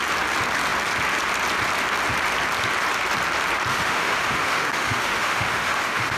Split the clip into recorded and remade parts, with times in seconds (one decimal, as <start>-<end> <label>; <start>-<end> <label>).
0.0-3.7 recorded; 3.7-6.2 remade